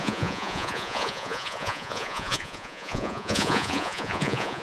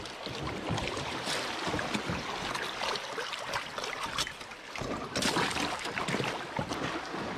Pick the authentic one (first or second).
second